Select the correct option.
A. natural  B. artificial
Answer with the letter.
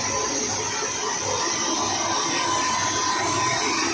A